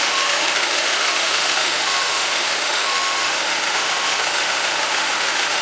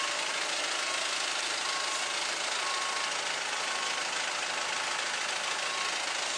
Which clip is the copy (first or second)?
first